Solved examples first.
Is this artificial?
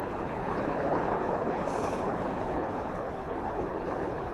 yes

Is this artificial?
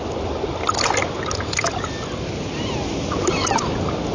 no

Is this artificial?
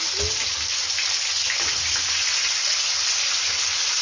no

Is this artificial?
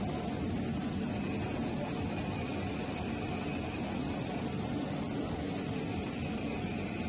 no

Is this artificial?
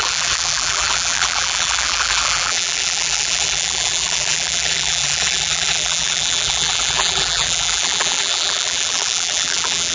yes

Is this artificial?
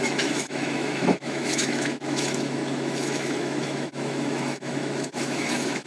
yes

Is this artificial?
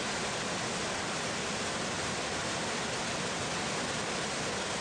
no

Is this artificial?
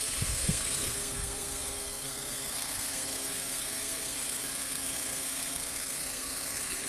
yes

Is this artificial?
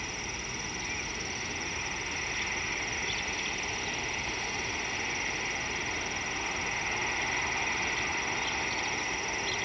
no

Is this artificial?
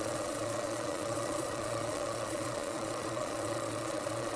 yes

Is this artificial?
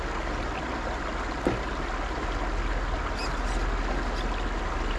no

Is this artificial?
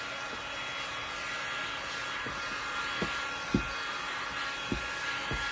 no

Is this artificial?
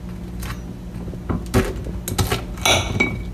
no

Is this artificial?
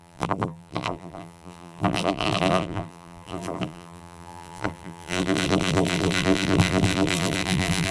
yes